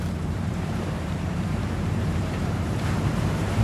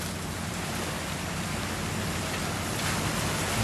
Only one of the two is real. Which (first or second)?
second